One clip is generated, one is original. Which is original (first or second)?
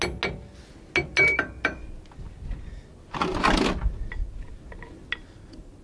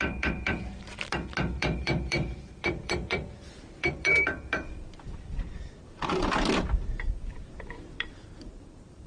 first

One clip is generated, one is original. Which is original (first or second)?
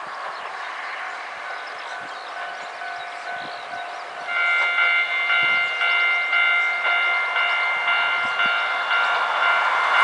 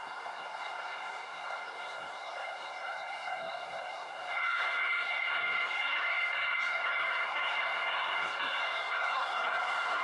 first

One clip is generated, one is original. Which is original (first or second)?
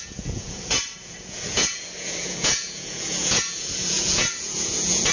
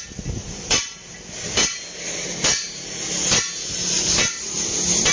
second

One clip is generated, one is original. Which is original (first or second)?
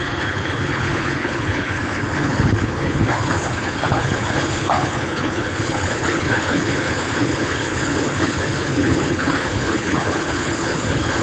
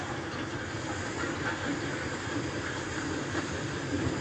second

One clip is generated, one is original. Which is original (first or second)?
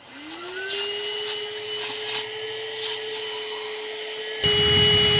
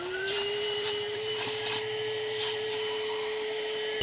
first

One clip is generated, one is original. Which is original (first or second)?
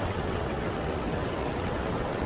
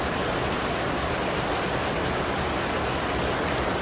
second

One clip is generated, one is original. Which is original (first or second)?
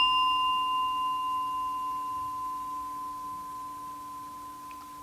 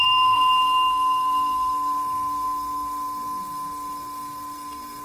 first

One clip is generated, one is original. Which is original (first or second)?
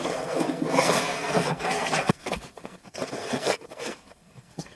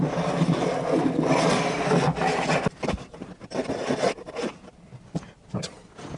second